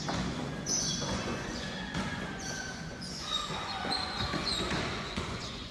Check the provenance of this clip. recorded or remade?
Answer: remade